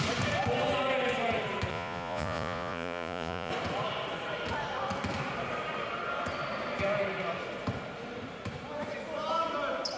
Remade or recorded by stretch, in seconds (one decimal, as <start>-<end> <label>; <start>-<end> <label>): 0.0-1.7 recorded; 1.7-3.5 remade; 3.5-10.0 recorded